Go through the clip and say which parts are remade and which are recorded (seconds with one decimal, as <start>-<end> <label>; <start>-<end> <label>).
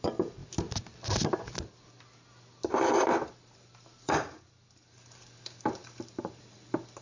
0.0-0.4 remade; 0.4-2.9 recorded; 2.9-7.0 remade